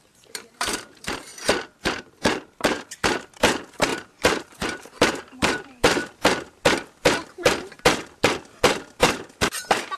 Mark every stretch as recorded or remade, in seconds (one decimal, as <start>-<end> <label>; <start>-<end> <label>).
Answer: 0.0-6.0 remade; 6.0-8.2 recorded; 8.2-10.0 remade

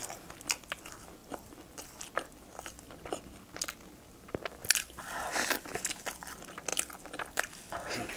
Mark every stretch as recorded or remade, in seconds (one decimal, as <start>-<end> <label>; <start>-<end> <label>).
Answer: 0.0-1.2 recorded; 1.2-2.1 remade; 2.1-4.6 recorded; 4.6-5.9 remade; 5.9-8.2 recorded

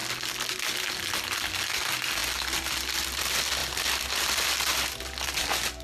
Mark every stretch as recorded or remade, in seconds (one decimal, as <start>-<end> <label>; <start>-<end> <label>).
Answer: 0.0-3.6 recorded; 3.6-4.7 remade; 4.7-5.8 recorded

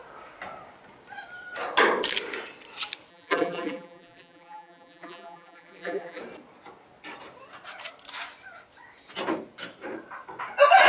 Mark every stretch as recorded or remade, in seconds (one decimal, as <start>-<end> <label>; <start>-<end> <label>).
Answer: 0.0-3.1 recorded; 3.1-6.2 remade; 6.2-10.9 recorded

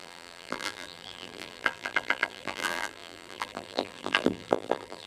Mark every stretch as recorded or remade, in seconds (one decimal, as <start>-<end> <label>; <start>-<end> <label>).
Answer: 0.0-5.1 remade

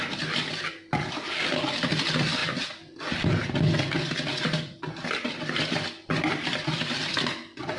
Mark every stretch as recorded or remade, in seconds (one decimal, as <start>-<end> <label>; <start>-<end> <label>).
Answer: 0.0-2.4 remade; 2.4-5.1 recorded; 5.1-7.8 remade

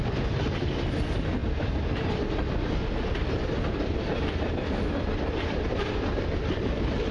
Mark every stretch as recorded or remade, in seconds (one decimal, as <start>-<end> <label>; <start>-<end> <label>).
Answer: 0.0-1.4 remade; 1.4-5.4 recorded; 5.4-7.1 remade

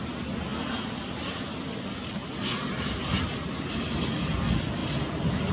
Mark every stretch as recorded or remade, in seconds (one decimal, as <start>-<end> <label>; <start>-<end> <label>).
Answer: 0.0-5.5 recorded